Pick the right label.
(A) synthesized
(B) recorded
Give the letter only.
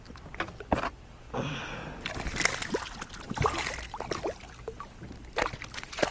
B